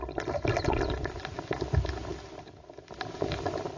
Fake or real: real